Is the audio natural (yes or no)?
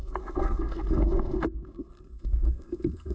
no